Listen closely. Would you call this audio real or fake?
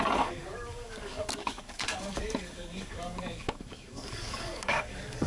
fake